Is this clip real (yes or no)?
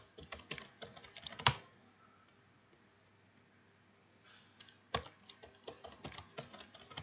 yes